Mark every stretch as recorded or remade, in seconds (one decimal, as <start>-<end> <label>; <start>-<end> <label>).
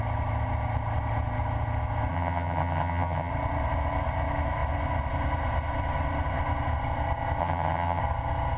0.0-2.1 recorded; 2.1-3.3 remade; 3.3-7.4 recorded; 7.4-8.0 remade; 8.0-8.6 recorded